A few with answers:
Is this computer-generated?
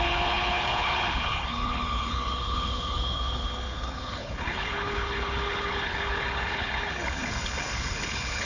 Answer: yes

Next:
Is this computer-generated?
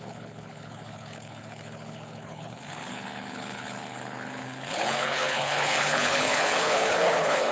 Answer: yes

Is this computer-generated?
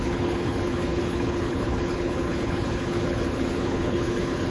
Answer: yes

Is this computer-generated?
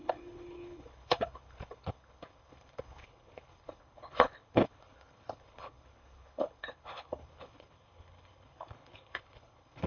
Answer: yes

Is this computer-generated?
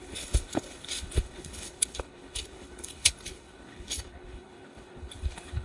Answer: yes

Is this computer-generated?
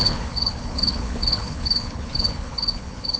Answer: yes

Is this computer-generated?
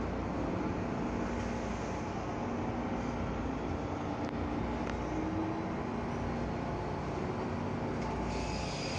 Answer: no